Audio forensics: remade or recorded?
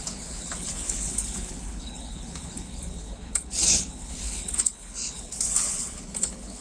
remade